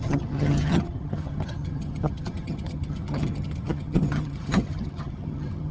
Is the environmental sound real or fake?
fake